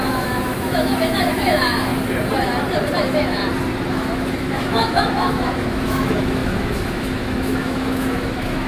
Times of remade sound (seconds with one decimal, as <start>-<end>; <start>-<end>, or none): 0.0-1.9; 3.0-3.4; 3.9-8.7